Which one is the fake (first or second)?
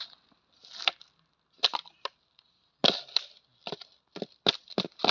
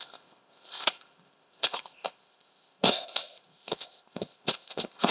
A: second